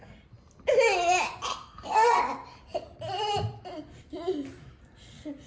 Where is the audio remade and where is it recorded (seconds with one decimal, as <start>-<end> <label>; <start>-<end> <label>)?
0.0-1.5 recorded; 1.5-2.2 remade; 2.2-5.5 recorded